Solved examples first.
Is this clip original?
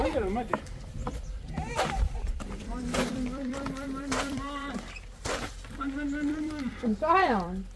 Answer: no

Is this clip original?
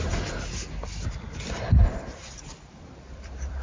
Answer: no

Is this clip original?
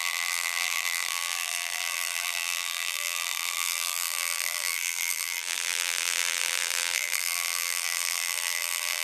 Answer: no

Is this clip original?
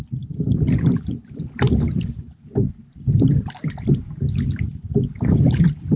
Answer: no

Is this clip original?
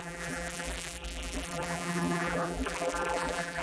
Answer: no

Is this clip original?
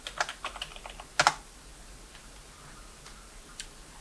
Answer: yes